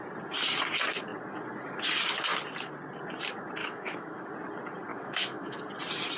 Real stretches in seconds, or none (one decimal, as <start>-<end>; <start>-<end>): 0.0-3.6; 4.3-4.9; 5.6-6.2